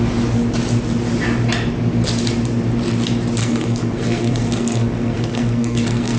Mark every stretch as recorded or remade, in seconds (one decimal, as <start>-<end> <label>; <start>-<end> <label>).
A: 0.0-3.4 recorded; 3.4-6.2 remade